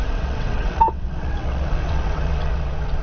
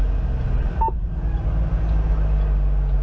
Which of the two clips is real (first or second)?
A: second